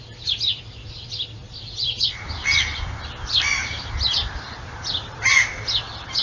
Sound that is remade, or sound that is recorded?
recorded